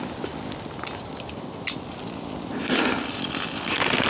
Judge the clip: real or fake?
real